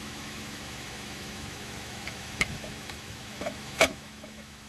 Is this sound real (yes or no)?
no